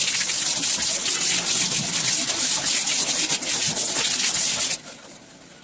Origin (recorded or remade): recorded